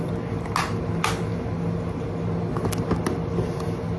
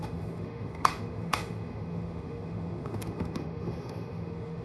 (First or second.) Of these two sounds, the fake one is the second